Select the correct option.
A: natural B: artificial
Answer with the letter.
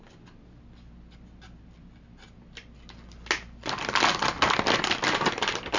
A